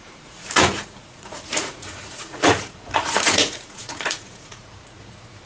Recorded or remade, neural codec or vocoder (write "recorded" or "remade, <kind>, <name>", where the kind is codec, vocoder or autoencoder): remade, vocoder, Vocos